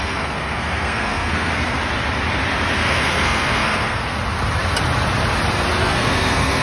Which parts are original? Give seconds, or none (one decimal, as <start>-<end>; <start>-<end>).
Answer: 1.5-2.8; 4.2-5.8